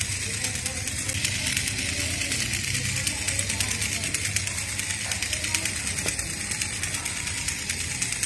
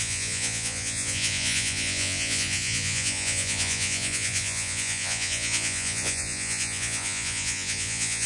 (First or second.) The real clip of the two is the first